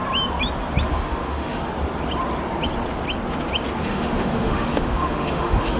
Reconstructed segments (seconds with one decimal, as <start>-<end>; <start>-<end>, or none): 0.9-1.7; 3.8-5.8